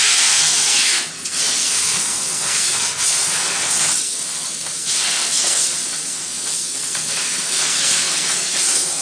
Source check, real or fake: fake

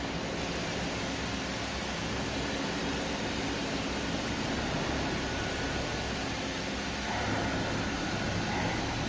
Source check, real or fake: fake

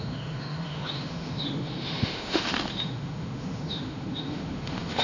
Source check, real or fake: fake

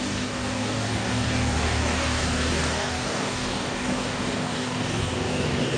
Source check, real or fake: fake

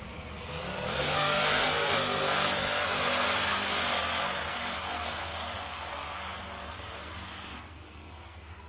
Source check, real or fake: fake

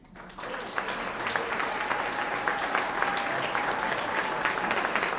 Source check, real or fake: real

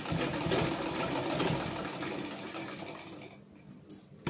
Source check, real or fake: real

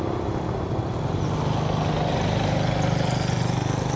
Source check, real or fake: real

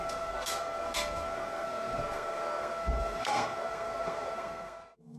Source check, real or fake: fake